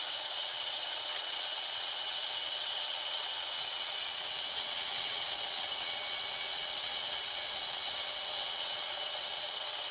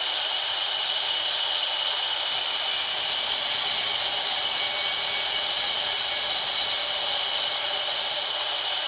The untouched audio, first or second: second